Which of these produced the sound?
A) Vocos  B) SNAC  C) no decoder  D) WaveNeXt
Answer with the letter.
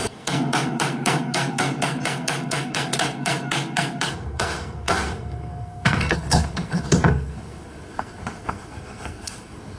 B